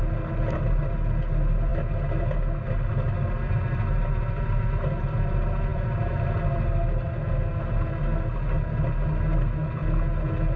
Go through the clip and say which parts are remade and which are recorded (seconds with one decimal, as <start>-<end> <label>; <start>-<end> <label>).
0.0-10.6 recorded